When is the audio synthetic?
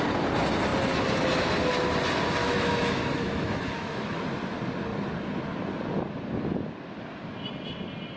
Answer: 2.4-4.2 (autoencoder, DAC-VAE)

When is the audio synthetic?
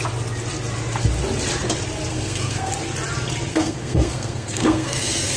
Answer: 2.1-2.7 (codec, SNAC); 3.5-5.4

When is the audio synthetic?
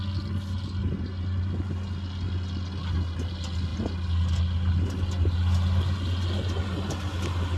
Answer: none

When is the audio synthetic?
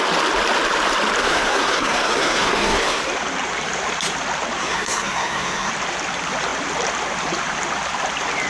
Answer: 1.2-3.0 (codec, SNAC); 4.6-5.7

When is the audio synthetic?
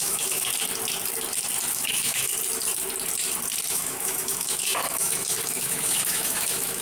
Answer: 0.0-0.5 (autoencoder, DAC-VAE); 1.7-2.3; 3.7-6.8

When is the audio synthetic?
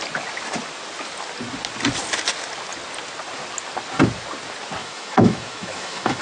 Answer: 4.8-6.2 (autoencoder, DAC-VAE)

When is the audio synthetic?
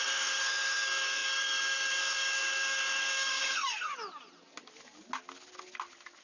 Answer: 0.0-3.9 (codec, SNAC)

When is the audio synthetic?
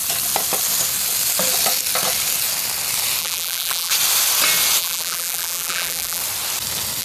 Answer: 3.2-3.9 (vocoder, BigVGAN v2); 4.8-6.2